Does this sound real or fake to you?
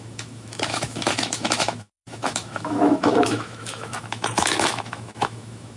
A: fake